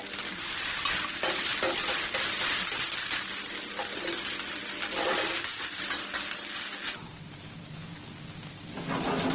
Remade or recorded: recorded